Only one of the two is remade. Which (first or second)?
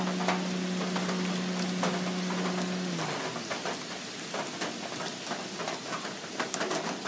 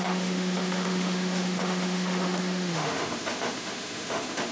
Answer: second